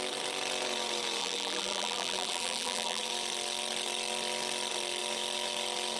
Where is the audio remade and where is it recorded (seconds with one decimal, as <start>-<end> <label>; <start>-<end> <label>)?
0.0-1.2 recorded; 1.2-3.0 remade; 3.0-6.0 recorded